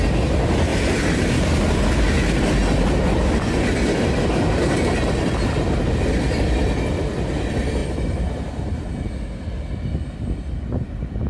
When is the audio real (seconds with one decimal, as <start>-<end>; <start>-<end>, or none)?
0.0-0.7; 1.6-7.8; 9.1-11.3